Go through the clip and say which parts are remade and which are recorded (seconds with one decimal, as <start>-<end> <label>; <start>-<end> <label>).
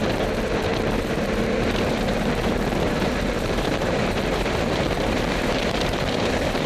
0.0-6.7 remade